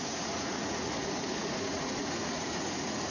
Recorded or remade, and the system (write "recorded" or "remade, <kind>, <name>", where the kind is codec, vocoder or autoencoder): remade, vocoder, Vocos